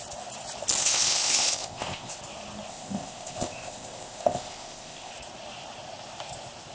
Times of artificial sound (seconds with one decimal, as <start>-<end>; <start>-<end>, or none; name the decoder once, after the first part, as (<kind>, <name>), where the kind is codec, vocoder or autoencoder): 0.8-2.2 (codec, ZipCodec); 2.7-5.1